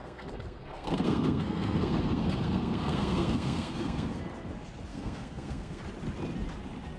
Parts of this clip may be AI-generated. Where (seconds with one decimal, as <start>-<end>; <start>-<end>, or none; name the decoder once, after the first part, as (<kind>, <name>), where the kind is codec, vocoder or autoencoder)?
0.0-4.2 (codec, SNAC); 4.9-5.8